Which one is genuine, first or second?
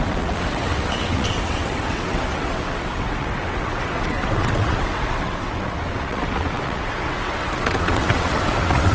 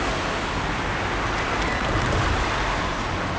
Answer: second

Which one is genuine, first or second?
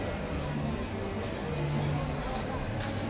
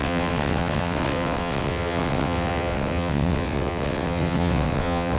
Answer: first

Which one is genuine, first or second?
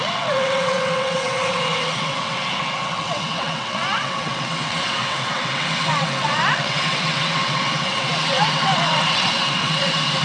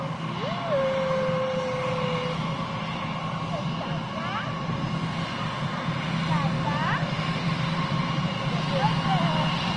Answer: second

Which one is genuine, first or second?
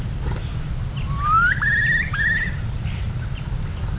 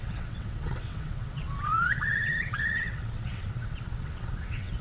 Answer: first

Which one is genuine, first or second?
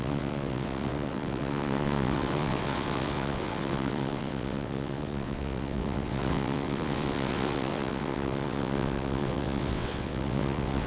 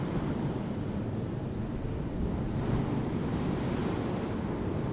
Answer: second